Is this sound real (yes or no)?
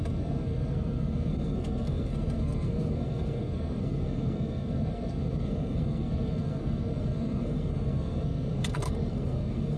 no